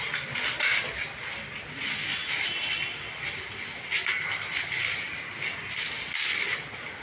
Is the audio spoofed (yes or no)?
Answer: no